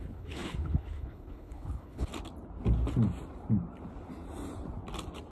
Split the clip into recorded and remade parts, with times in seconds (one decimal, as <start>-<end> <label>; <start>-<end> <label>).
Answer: 0.0-2.1 remade; 2.1-5.3 recorded